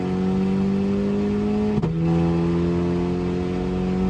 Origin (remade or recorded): recorded